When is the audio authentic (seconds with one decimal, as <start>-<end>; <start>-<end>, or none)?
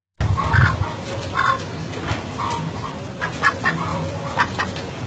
2.9-3.9; 4.6-5.1